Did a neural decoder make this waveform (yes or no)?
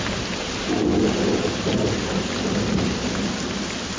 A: no